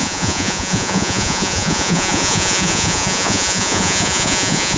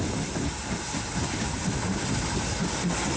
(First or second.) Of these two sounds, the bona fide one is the second